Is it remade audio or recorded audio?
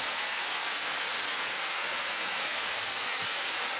remade